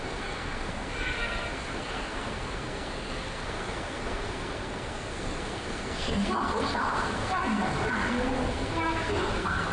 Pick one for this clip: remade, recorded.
remade